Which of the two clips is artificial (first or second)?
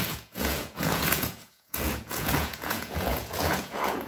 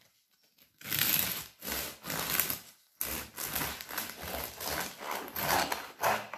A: first